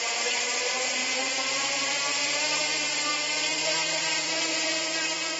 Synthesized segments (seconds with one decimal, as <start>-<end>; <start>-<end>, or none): 0.0-2.6; 3.5-5.4